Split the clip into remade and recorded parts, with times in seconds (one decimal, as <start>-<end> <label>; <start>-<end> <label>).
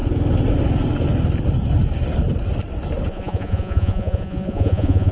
0.0-3.1 recorded; 3.1-5.1 remade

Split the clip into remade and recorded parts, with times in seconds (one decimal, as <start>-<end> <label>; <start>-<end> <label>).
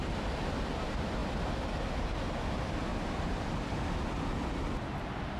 0.0-5.4 recorded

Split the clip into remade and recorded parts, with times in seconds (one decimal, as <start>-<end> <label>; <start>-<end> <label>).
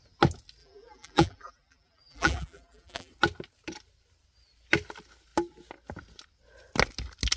0.0-0.6 recorded; 0.6-3.1 remade; 3.1-7.4 recorded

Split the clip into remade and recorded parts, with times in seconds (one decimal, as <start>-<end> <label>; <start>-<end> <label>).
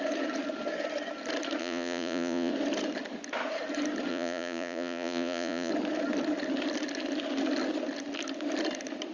0.0-1.6 recorded; 1.6-2.5 remade; 2.5-4.1 recorded; 4.1-5.7 remade; 5.7-9.1 recorded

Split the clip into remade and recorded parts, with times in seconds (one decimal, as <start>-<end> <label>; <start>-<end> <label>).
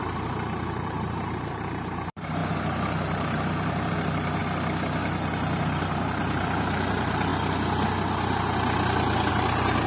0.0-2.4 remade; 2.4-2.9 recorded; 2.9-4.4 remade; 4.4-5.3 recorded; 5.3-7.3 remade; 7.3-9.3 recorded; 9.3-9.9 remade